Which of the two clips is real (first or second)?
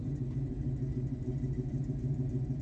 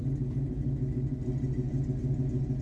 second